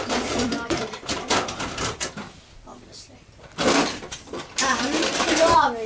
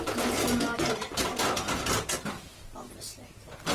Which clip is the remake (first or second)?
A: first